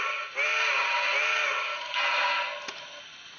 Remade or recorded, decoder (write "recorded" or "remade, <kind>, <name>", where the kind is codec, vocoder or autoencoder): recorded